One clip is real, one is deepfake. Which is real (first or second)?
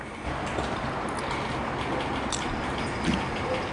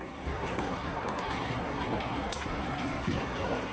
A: first